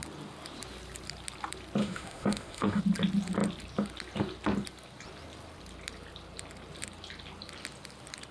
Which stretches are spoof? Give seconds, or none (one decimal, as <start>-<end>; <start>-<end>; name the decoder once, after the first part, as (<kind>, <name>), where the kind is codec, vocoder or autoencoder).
1.8-2.8 (autoencoder, DAC-VAE)